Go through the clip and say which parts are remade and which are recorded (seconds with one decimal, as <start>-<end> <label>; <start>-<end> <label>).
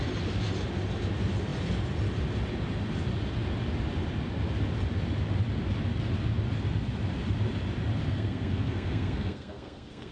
0.0-8.1 recorded; 8.1-10.1 remade